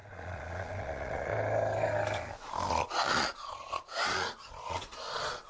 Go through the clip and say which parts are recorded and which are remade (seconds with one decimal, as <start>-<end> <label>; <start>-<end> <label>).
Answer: 0.0-1.3 remade; 1.3-2.7 recorded; 2.7-5.5 remade

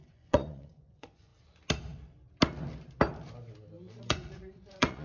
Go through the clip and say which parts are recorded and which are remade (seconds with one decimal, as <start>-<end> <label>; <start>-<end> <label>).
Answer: 0.0-1.3 remade; 1.3-3.9 recorded; 3.9-5.0 remade

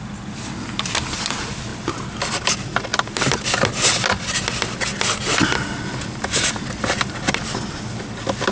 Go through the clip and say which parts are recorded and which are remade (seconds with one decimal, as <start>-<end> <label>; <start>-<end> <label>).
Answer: 0.0-8.5 recorded

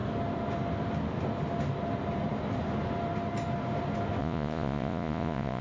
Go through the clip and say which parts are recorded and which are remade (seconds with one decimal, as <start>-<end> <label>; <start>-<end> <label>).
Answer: 0.0-4.2 recorded; 4.2-5.6 remade

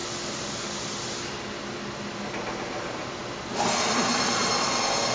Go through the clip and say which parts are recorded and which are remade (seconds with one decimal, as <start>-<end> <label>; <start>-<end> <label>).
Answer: 0.0-5.1 recorded